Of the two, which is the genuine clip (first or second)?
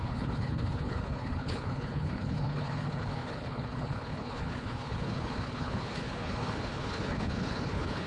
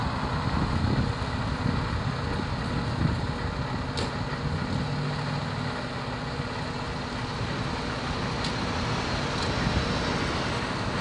second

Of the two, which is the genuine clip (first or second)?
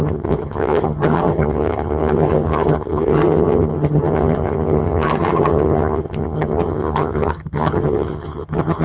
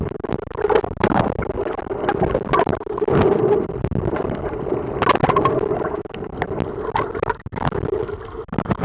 second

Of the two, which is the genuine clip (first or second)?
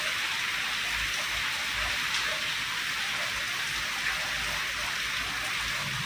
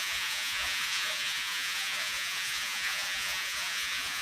first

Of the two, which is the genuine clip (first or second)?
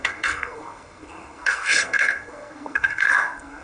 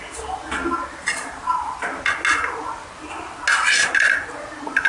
second